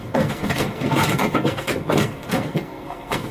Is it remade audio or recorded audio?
remade